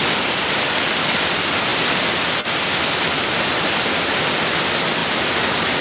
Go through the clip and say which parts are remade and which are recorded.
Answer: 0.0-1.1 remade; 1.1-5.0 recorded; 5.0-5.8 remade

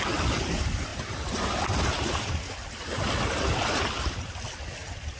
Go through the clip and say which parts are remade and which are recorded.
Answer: 0.0-0.9 recorded; 0.9-4.0 remade; 4.0-5.2 recorded

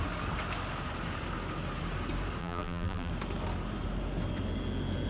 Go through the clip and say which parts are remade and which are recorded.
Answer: 0.0-2.4 recorded; 2.4-3.1 remade; 3.1-5.1 recorded

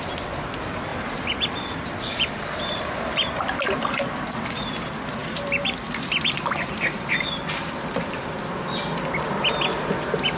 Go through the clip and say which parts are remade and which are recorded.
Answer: 0.0-0.9 recorded; 0.9-3.4 remade; 3.4-5.2 recorded; 5.2-8.5 remade; 8.5-10.4 recorded